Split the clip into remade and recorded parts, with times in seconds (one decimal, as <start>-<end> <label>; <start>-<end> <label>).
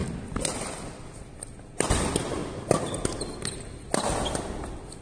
0.0-5.0 recorded